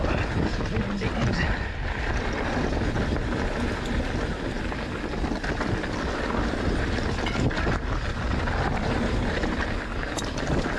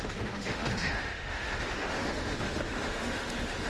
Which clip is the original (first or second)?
first